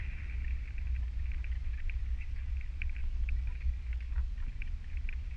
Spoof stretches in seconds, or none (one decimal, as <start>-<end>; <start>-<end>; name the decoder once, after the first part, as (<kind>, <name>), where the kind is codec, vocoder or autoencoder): 2.0-2.5 (codec, DAC); 3.0-4.3